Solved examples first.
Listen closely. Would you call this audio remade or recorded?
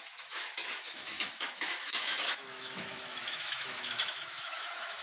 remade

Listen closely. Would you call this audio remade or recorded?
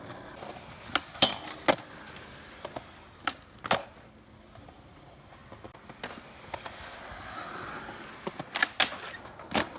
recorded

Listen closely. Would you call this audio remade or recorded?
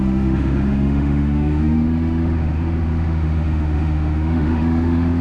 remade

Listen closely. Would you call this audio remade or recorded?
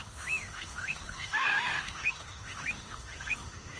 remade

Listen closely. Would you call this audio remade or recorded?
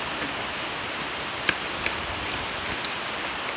recorded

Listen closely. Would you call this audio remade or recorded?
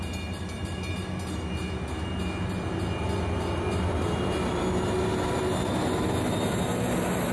recorded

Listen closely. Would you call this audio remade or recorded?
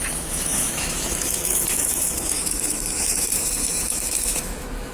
remade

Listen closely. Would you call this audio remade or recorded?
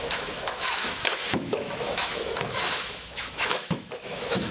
remade